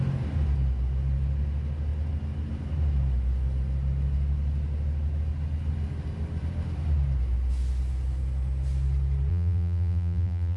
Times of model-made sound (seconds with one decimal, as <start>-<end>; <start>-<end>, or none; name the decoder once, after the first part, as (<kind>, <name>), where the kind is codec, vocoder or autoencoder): 9.3-10.6 (vocoder, BigVGAN v2)